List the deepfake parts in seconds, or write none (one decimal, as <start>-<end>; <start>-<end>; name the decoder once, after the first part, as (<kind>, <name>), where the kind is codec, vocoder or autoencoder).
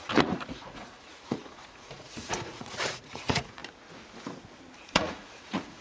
0.0-3.6 (vocoder, Vocos); 4.8-5.8